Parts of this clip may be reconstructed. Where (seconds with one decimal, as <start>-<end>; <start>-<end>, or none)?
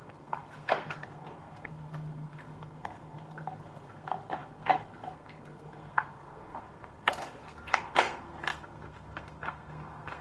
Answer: 0.0-10.2